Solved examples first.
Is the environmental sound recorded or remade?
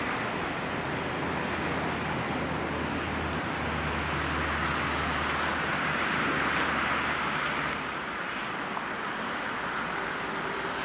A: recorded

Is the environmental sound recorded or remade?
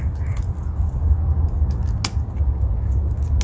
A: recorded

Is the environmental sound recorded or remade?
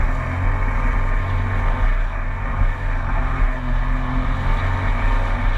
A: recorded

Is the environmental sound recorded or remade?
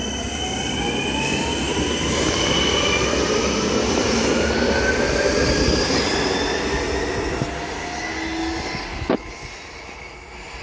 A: recorded